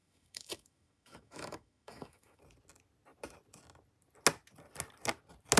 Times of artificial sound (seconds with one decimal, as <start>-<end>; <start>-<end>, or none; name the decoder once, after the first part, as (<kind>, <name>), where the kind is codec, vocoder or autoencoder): 0.0-2.4 (autoencoder, DAC-VAE)